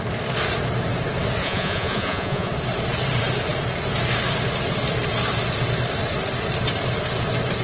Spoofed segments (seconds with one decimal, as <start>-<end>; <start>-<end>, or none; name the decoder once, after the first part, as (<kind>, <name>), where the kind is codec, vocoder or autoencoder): 1.4-2.5 (vocoder, Vocos)